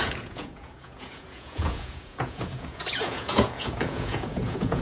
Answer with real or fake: fake